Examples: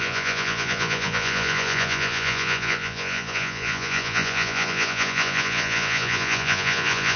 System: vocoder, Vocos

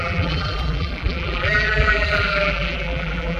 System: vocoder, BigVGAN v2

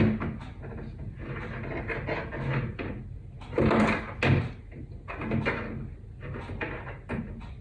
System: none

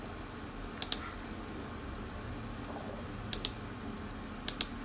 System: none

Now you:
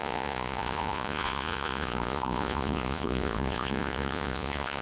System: vocoder, Vocos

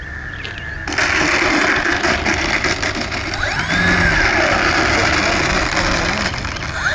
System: none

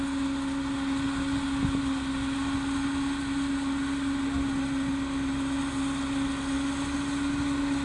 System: none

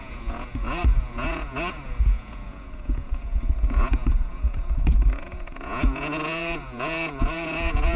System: vocoder, Vocos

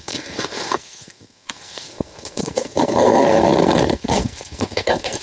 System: codec, SNAC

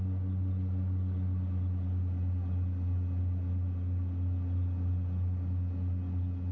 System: none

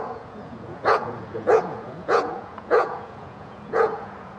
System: vocoder, Vocos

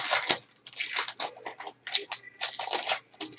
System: none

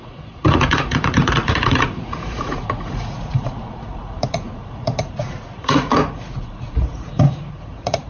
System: vocoder, Vocos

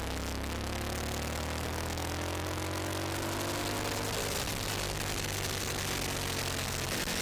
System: none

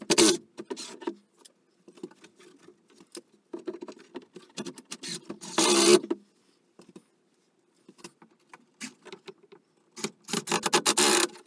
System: none